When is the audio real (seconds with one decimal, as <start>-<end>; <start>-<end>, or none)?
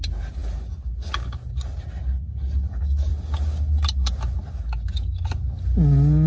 0.0-6.3